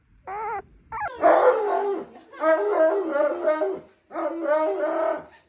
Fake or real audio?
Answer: real